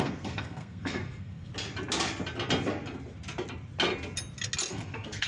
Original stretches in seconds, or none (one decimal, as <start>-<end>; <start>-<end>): 1.5-4.7